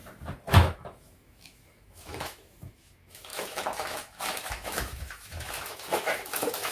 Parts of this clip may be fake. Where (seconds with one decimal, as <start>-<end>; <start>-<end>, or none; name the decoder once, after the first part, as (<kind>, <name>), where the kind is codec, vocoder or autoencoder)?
0.5-6.7 (autoencoder, DAC-VAE)